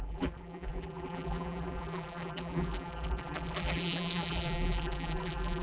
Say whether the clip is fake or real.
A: fake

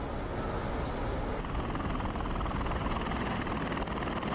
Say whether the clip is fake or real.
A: real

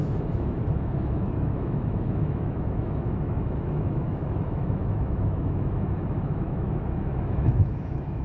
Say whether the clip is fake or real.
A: fake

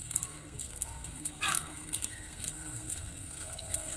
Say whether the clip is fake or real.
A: fake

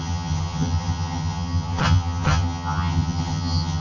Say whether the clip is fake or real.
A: fake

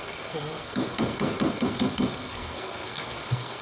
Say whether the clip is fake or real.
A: fake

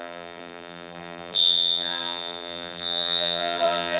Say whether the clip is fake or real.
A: fake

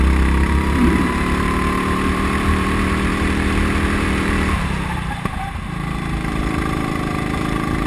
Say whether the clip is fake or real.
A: fake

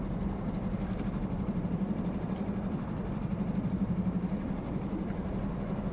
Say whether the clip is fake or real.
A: fake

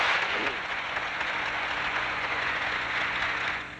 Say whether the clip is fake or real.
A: fake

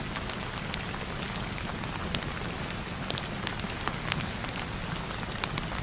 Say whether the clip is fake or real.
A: real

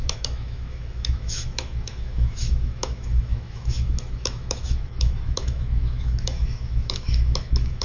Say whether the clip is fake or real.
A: fake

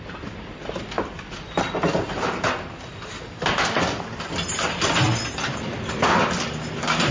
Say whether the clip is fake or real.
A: real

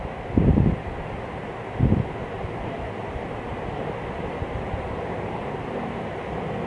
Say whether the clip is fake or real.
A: real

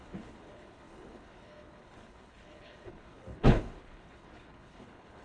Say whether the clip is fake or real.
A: fake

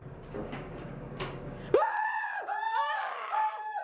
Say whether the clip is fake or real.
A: fake